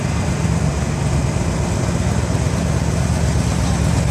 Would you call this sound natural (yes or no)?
yes